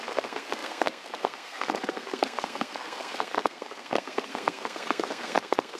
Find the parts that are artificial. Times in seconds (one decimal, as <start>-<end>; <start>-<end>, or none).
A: 0.0-5.8